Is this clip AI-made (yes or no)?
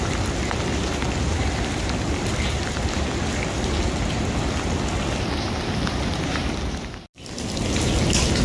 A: no